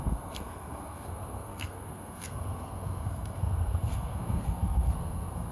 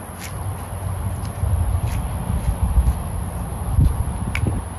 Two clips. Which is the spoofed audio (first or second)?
first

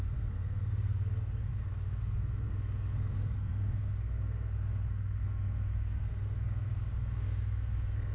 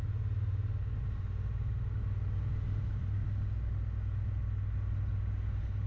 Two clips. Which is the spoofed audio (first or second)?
first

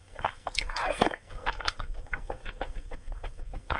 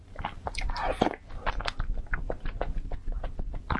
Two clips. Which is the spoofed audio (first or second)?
first